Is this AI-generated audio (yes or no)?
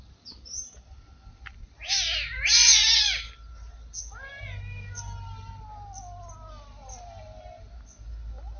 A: no